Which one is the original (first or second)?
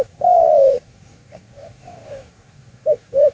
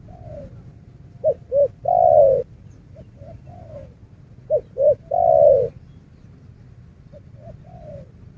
second